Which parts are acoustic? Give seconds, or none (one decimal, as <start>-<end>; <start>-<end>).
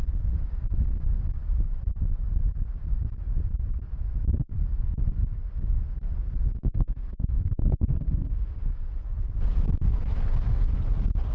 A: 0.0-6.7; 8.7-11.3